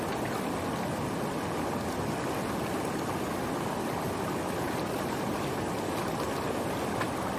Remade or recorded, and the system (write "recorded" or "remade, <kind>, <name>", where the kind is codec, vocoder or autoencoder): recorded